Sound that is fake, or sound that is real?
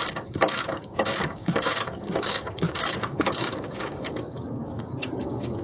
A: fake